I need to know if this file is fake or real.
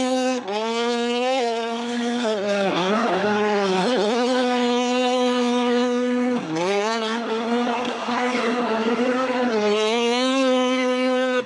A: fake